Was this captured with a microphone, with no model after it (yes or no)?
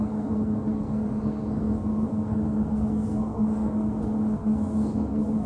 no